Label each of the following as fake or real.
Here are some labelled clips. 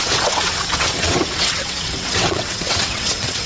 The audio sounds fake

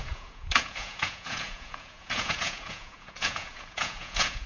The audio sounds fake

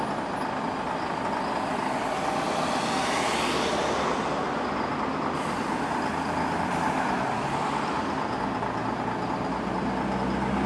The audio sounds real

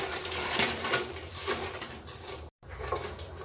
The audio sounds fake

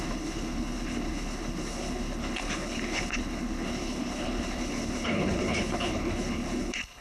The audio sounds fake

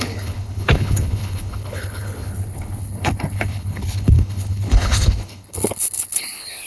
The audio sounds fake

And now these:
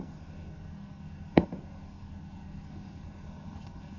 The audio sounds fake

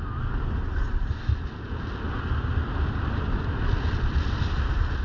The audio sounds real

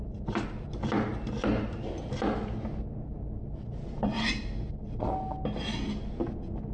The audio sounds real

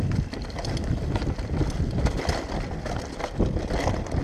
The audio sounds real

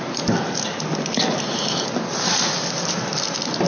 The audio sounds real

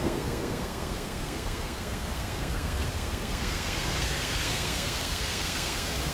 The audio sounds fake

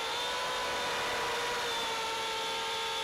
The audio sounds real